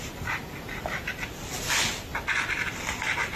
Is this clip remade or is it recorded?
recorded